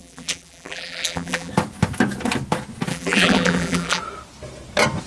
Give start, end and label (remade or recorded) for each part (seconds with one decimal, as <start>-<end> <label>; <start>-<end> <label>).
0.0-1.5 remade; 1.5-2.9 recorded; 2.9-4.0 remade; 4.0-5.1 recorded